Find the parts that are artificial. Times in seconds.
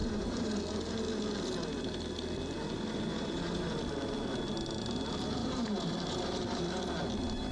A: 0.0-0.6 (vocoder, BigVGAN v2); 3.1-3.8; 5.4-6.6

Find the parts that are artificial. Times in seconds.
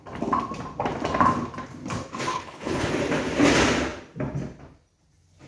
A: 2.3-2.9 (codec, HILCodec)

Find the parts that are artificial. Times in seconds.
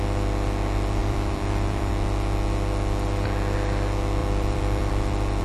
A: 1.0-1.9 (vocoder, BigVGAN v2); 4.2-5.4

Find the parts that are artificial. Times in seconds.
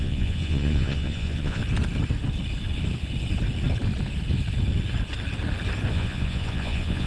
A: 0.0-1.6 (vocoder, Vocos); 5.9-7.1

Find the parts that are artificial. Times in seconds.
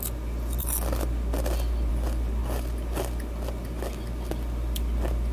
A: none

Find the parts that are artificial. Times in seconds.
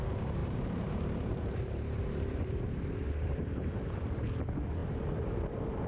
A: 0.4-3.9 (vocoder, BigVGAN v2); 4.8-5.4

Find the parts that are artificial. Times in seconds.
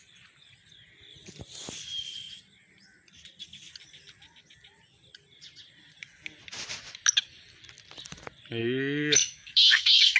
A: 8.6-10.2 (autoencoder, DAC-VAE)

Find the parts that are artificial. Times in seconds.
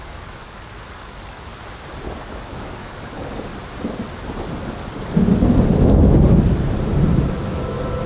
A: 0.0-1.5 (codec, DAC); 2.2-3.5